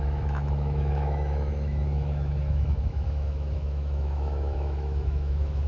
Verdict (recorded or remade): remade